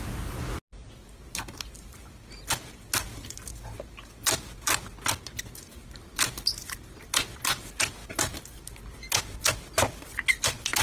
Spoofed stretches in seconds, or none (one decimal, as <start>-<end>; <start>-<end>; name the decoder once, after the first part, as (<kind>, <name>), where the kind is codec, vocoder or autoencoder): none